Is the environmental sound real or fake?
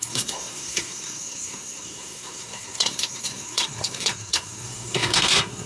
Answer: fake